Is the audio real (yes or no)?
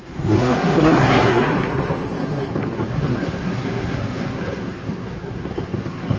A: no